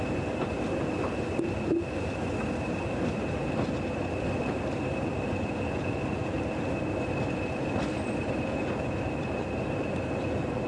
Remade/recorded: recorded